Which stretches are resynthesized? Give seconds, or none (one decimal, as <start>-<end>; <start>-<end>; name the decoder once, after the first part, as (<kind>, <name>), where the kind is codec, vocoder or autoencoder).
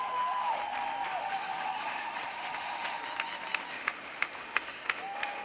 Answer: 0.0-0.6 (autoencoder, DAC-VAE); 1.1-3.0; 3.7-5.4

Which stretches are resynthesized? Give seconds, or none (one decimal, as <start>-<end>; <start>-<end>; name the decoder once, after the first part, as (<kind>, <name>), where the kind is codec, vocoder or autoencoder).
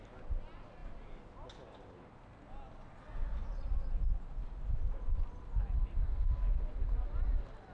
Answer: none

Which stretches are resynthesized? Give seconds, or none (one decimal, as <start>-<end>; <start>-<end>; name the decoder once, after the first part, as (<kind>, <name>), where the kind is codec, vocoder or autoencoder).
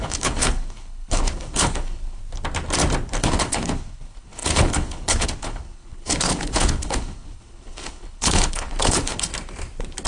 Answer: 0.0-2.2 (codec, HILCodec); 3.2-9.3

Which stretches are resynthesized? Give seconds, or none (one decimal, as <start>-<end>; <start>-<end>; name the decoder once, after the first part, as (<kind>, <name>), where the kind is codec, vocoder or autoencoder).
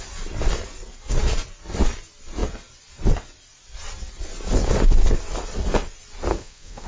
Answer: 6.3-6.9 (codec, SNAC)